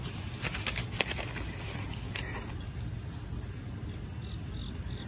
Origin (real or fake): real